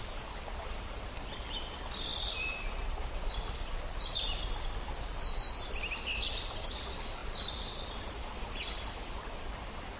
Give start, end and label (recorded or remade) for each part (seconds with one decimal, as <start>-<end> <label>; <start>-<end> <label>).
0.0-10.0 recorded